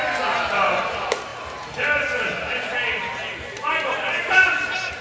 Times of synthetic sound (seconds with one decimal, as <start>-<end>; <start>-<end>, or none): none